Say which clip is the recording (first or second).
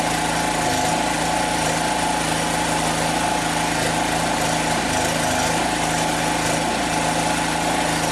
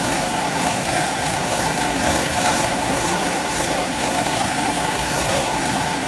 first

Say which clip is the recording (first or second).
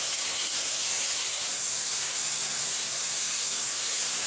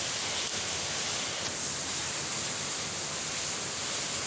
second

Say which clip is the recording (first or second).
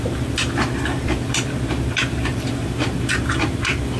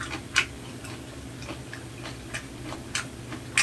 second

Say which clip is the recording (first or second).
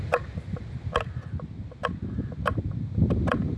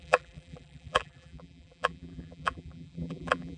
first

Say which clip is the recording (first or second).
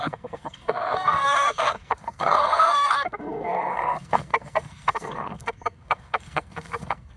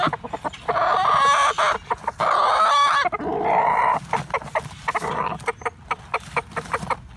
second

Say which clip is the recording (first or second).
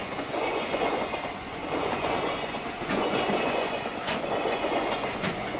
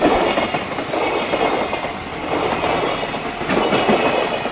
second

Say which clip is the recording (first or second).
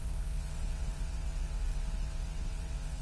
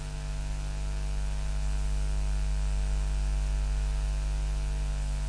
second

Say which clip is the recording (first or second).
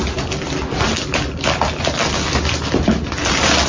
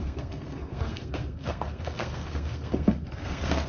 first